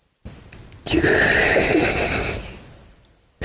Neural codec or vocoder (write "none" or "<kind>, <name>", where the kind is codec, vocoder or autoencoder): none